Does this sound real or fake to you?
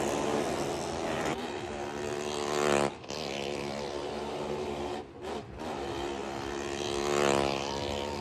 real